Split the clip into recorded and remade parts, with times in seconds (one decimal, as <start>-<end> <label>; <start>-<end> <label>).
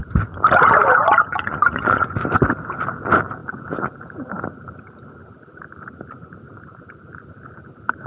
0.0-1.3 recorded; 1.3-2.1 remade; 2.1-8.1 recorded